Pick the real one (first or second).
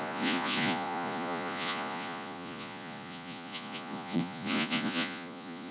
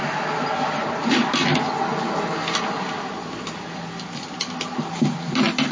second